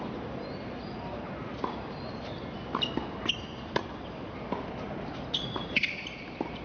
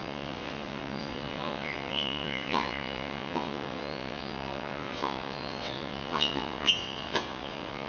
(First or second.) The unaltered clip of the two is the first